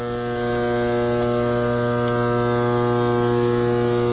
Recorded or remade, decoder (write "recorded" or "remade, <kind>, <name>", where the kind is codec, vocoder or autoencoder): recorded